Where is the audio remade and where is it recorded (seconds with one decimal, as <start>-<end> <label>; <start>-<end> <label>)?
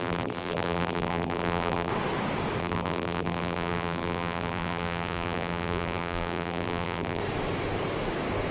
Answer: 0.0-1.9 remade; 1.9-2.6 recorded; 2.6-7.2 remade; 7.2-8.5 recorded